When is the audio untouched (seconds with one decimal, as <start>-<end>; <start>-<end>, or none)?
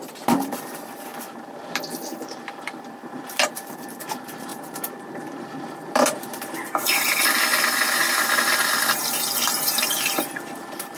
7.5-9.0